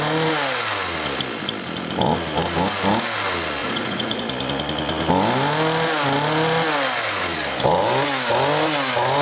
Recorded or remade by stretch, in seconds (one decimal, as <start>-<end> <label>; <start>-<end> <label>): 0.0-3.6 recorded; 3.6-4.2 remade; 4.2-9.2 recorded